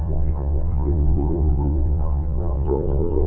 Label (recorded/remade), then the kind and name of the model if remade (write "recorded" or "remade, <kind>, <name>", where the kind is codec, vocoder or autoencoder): remade, vocoder, WaveNeXt